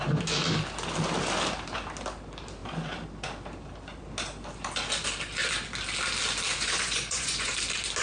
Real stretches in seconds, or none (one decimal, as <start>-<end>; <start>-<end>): 0.0-6.5; 7.5-8.0